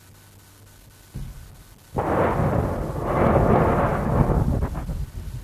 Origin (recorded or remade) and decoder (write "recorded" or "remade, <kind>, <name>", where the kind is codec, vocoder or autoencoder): recorded